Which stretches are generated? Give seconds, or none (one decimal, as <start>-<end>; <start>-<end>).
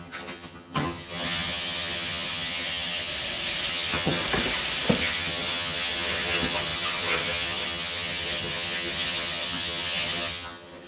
0.0-3.1; 3.7-4.2; 5.0-10.9